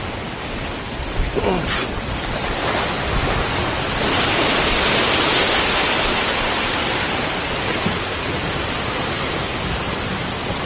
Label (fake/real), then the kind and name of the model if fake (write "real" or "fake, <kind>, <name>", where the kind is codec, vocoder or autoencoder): real